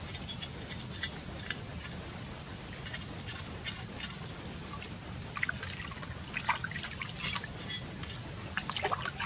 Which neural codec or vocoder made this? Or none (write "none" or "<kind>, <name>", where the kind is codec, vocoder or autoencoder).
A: none